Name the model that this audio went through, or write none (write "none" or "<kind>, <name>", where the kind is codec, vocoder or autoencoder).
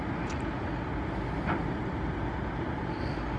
none